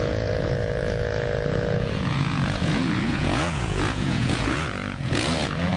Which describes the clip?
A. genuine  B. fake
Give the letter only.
B